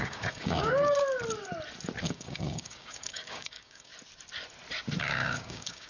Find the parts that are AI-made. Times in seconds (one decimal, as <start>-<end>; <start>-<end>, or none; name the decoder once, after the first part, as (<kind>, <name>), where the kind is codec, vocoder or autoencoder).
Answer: 0.0-1.0 (codec, DAC); 2.0-3.9; 5.0-5.9